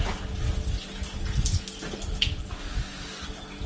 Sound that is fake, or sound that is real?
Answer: real